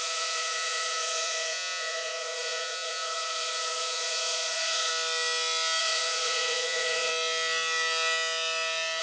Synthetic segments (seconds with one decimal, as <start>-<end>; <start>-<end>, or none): 0.0-4.9; 5.8-7.1